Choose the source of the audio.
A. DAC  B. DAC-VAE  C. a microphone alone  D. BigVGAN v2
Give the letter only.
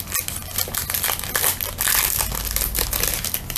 C